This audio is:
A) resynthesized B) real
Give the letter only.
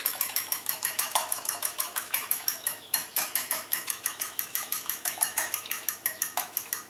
A